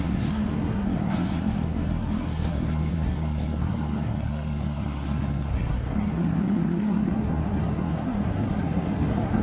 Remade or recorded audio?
remade